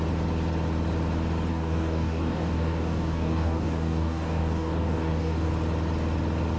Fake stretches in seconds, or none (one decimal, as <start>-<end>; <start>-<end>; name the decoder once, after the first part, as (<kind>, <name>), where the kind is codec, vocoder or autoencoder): 1.5-5.5 (codec, DAC)